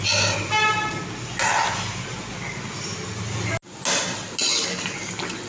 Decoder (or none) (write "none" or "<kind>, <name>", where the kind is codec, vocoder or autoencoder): none